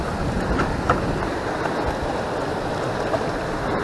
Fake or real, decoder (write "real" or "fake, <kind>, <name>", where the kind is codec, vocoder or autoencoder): real